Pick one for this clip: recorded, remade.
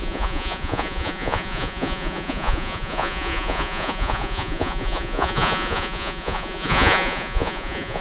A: remade